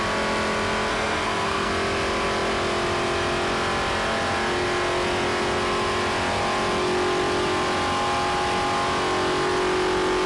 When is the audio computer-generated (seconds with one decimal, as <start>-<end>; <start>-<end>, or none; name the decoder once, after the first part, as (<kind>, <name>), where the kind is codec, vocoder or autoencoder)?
0.9-1.7 (codec, SNAC)